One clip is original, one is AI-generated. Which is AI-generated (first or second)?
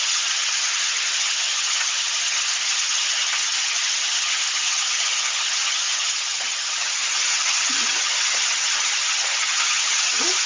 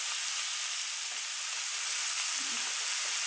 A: first